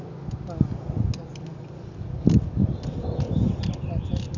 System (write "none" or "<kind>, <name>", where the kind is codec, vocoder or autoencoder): none